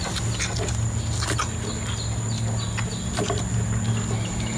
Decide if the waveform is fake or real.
real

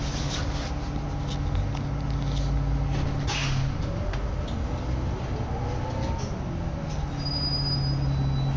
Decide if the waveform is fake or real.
real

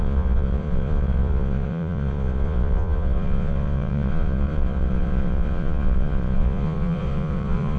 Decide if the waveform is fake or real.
fake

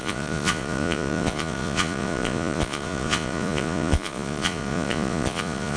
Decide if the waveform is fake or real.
fake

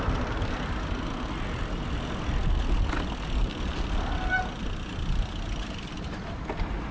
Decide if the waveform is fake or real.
real